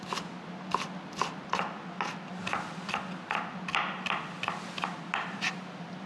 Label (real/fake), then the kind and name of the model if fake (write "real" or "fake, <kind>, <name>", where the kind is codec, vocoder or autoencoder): real